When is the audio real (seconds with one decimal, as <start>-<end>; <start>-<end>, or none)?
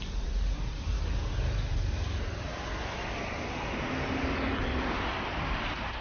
2.5-5.5